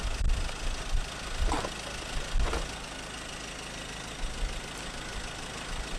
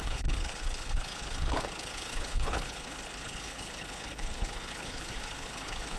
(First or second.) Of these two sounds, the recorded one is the first